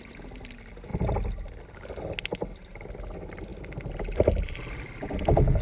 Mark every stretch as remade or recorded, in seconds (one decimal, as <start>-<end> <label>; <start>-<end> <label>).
0.0-5.6 recorded